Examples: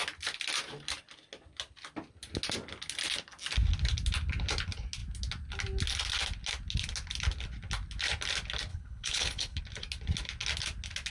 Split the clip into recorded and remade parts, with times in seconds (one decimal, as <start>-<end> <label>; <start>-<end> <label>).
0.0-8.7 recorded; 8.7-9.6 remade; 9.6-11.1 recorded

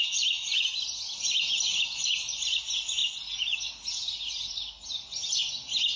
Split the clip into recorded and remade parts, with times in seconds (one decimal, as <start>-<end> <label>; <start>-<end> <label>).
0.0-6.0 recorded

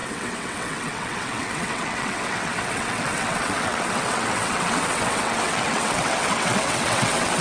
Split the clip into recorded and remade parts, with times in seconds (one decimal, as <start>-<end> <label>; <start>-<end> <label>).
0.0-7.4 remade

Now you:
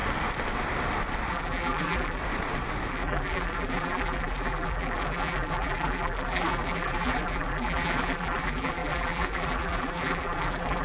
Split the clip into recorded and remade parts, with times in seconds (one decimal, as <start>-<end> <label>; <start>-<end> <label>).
0.0-1.3 recorded; 1.3-2.2 remade; 2.2-2.9 recorded; 2.9-10.8 remade